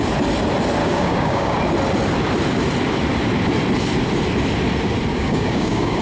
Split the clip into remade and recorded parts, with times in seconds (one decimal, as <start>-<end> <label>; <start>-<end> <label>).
0.0-0.8 recorded; 0.8-1.6 remade; 1.6-5.1 recorded; 5.1-6.0 remade